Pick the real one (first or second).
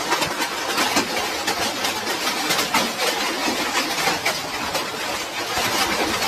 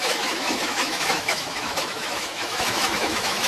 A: first